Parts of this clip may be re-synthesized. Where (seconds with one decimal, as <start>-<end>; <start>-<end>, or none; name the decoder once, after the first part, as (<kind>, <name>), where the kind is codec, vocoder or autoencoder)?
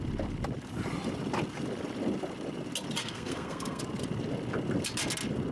3.0-3.8 (codec, SNAC)